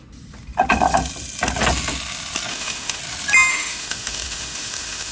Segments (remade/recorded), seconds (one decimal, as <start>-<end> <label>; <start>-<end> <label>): 0.0-2.5 recorded; 2.5-3.0 remade; 3.0-3.5 recorded; 3.5-5.1 remade